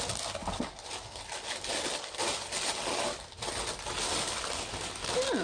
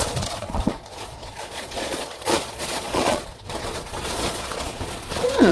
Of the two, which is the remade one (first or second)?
second